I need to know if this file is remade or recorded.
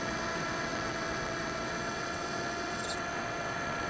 remade